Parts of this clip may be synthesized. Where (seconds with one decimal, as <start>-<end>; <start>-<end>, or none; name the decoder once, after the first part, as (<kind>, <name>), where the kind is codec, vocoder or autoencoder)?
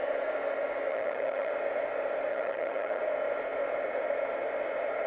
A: 0.9-1.5 (vocoder, HiFi-GAN); 2.3-3.0